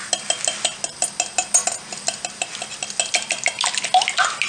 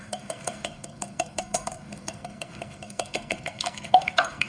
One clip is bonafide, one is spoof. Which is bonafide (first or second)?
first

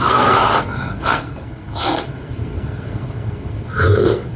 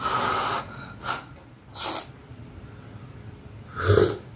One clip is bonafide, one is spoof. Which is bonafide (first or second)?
second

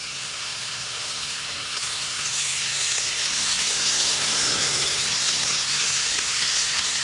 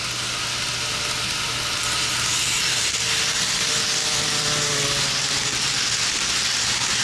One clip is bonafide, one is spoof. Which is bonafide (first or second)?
second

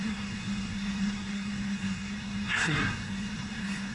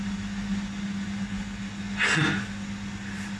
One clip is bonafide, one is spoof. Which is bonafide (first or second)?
second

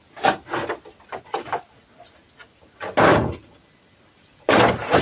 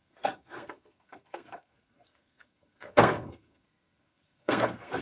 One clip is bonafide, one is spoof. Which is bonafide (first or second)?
first